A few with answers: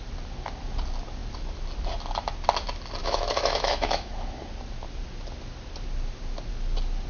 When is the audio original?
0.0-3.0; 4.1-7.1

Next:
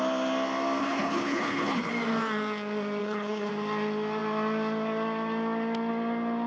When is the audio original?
0.0-0.8; 1.9-3.0; 3.5-6.5

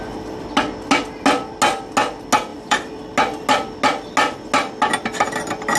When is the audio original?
0.0-2.5; 3.0-5.8

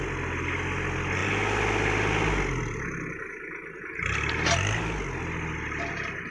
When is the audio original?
0.0-6.3

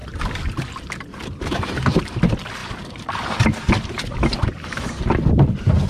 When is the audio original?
0.0-2.6; 5.0-5.9